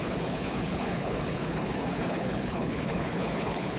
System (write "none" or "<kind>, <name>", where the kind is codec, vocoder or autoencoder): codec, HILCodec